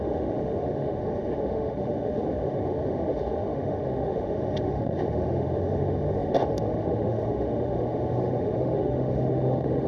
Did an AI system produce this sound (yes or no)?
yes